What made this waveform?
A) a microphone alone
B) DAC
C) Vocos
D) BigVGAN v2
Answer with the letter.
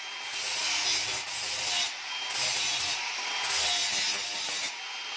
A